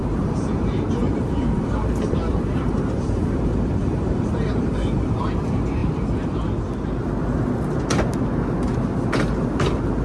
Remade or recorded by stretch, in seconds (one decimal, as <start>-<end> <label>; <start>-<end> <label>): 0.0-3.4 remade; 3.4-3.8 recorded; 3.8-4.6 remade; 4.6-10.0 recorded